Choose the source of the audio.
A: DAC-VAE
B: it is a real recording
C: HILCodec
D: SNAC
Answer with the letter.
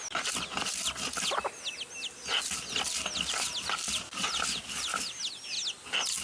B